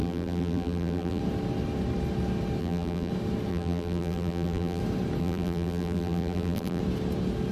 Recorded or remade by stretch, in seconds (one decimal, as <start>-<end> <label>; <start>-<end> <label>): 0.0-1.2 remade; 1.2-2.6 recorded; 2.6-3.1 remade; 3.1-3.5 recorded; 3.5-4.8 remade; 4.8-5.2 recorded; 5.2-6.8 remade; 6.8-7.5 recorded